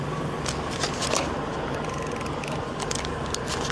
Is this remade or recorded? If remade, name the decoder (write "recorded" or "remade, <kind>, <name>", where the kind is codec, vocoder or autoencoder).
recorded